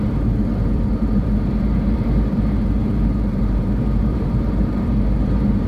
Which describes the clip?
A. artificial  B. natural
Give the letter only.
A